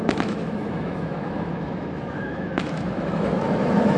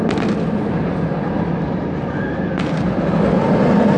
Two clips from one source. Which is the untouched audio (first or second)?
second